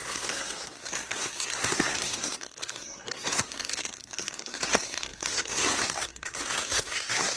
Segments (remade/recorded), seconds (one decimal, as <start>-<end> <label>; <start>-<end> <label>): 0.0-7.4 remade